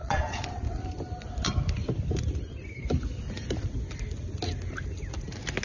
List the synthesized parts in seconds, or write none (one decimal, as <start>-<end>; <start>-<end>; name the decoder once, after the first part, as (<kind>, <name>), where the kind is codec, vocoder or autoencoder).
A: 0.0-0.6 (vocoder, Vocos)